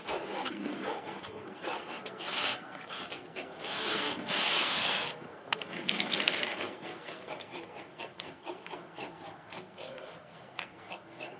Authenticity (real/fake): fake